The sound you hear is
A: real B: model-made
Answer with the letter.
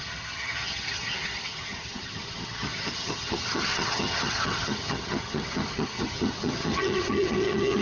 B